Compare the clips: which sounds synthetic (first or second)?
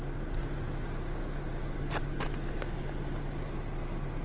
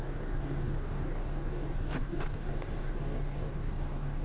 second